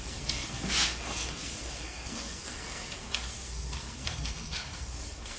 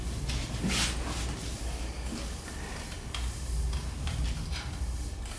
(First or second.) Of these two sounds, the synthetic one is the first